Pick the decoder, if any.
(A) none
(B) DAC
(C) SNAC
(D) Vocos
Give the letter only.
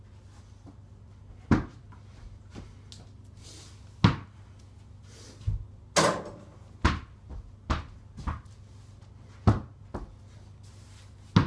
A